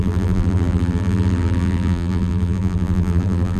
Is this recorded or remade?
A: remade